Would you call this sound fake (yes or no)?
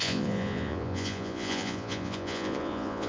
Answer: yes